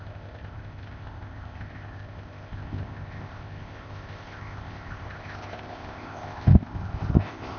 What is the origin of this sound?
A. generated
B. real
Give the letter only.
A